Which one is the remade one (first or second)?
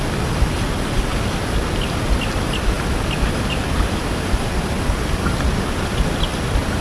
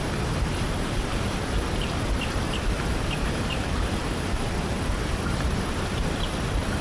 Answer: second